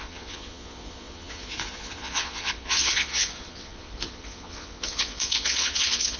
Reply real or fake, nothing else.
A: fake